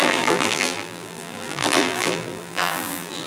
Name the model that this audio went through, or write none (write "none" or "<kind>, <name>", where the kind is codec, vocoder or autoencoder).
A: vocoder, BigVGAN v2